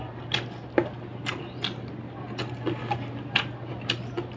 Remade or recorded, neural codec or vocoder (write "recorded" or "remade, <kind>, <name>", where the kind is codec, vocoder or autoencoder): remade, vocoder, BigVGAN v2